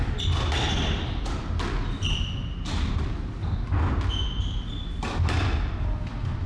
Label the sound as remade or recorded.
recorded